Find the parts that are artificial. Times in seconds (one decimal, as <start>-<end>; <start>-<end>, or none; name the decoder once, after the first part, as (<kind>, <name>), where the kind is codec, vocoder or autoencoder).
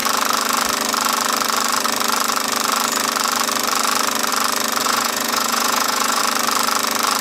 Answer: 4.8-6.2 (vocoder, Vocos)